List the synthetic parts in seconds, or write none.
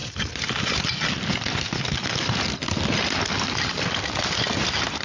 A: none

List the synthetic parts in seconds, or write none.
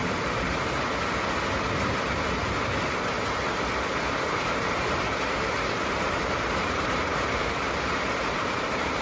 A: 4.0-9.0 (vocoder, BigVGAN v2)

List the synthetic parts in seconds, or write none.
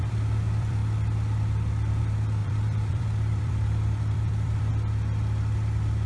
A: 0.0-0.8 (vocoder, BigVGAN v2); 2.0-4.7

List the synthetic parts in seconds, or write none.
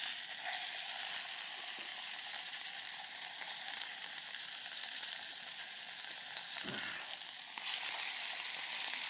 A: 1.9-6.4 (vocoder, BigVGAN v2)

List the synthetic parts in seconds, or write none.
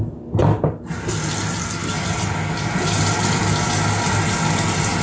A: none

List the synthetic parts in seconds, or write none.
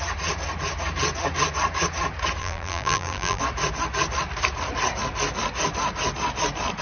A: 2.4-3.4 (vocoder, BigVGAN v2)